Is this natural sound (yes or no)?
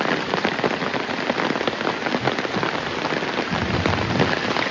yes